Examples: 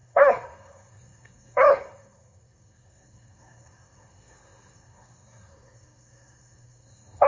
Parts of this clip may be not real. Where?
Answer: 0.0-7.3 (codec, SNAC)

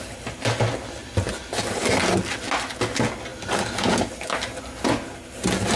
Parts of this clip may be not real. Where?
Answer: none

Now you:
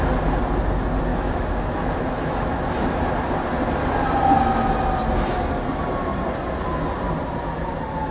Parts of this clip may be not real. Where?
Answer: 1.1-2.6 (autoencoder, DAC-VAE)

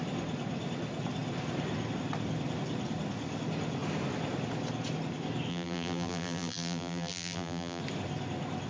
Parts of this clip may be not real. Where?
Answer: 5.5-7.8 (vocoder, BigVGAN v2)

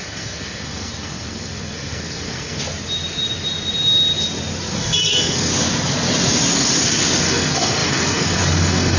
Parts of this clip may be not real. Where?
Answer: 0.0-2.6 (codec, SNAC); 4.7-5.5; 7.2-9.0

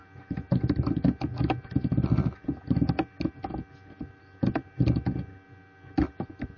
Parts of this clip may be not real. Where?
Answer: none